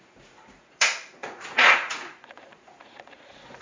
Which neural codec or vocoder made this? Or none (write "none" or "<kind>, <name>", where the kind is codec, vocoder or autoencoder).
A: vocoder, Vocos